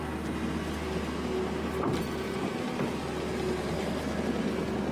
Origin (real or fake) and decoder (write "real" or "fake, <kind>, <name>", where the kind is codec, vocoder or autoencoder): real